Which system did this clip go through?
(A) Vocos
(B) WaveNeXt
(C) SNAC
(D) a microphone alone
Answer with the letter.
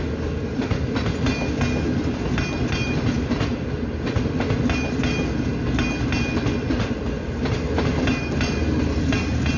D